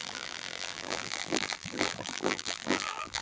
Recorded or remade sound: remade